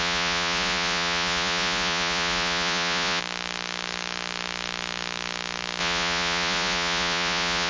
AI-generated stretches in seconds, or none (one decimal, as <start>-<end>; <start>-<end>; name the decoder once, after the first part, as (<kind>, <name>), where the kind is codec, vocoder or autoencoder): 0.0-3.2 (vocoder, Vocos); 5.8-7.7